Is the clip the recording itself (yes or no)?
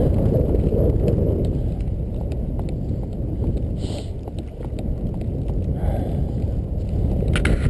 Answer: yes